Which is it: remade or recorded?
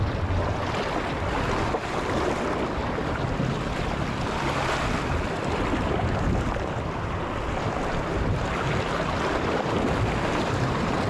remade